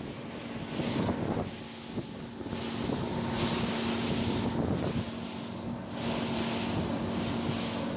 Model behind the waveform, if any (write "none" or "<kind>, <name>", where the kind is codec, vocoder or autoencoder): none